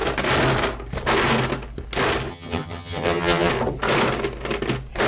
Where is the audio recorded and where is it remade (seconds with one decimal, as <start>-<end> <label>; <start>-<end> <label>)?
0.0-2.3 recorded; 2.3-3.5 remade; 3.5-5.1 recorded